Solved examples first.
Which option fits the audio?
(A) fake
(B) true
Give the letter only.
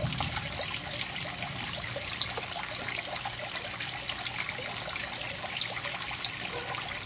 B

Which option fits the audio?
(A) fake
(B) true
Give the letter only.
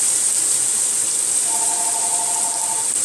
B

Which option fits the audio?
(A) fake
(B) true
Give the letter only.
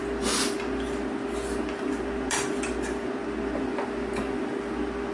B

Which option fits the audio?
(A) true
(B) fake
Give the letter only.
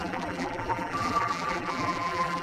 B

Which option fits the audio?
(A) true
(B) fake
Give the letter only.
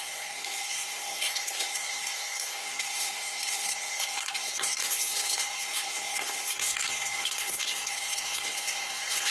B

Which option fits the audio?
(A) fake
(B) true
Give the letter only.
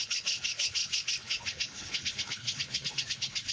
A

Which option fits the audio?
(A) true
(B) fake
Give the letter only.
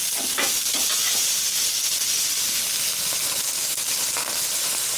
A